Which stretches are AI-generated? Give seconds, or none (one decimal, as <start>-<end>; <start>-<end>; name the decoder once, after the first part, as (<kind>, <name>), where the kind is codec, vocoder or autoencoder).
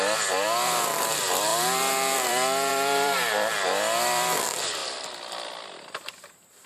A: 0.0-4.8 (vocoder, BigVGAN v2); 5.6-6.7